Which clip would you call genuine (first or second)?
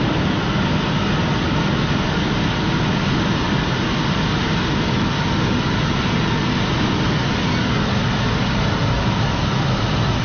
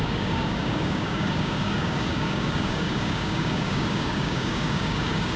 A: first